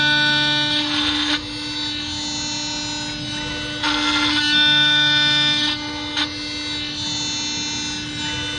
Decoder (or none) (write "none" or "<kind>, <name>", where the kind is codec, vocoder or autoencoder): none